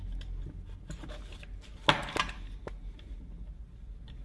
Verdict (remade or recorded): recorded